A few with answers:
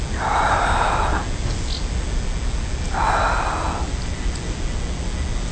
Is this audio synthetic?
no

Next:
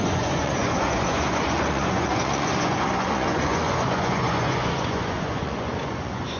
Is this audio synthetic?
yes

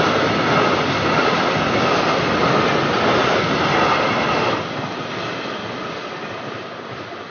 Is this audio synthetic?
no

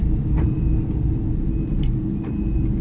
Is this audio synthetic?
yes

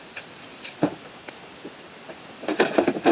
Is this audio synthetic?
no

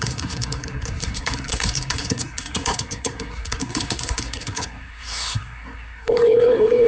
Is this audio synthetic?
yes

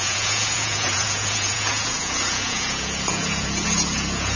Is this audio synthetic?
yes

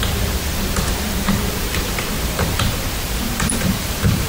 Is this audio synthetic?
yes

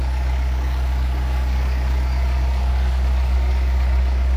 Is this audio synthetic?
yes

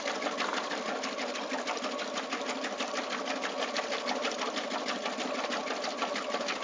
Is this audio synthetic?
no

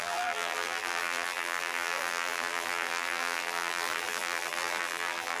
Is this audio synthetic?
yes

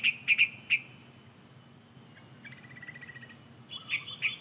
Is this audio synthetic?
no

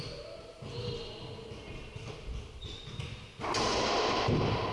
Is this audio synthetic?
no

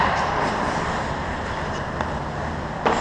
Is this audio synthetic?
no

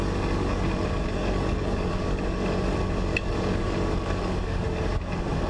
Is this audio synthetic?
yes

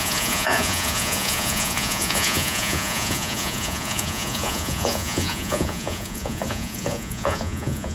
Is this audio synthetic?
yes